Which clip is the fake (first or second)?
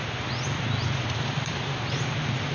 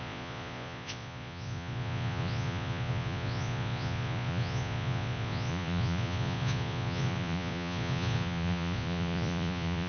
second